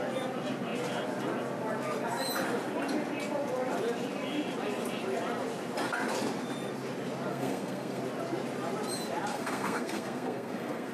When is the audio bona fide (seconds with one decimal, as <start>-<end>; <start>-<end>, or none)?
0.0-7.3; 8.0-9.3